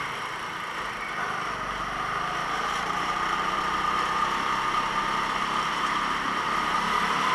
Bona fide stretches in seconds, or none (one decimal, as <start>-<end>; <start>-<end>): 0.0-2.4; 3.6-7.3